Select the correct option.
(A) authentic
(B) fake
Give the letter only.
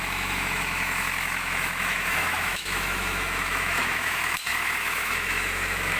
B